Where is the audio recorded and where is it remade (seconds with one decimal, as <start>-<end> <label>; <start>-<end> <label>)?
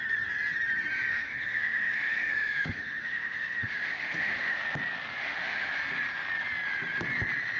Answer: 0.0-1.1 recorded; 1.1-4.6 remade; 4.6-5.2 recorded; 5.2-5.7 remade; 5.7-7.6 recorded